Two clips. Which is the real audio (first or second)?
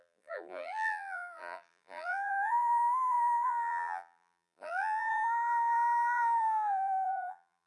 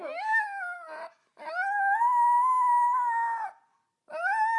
second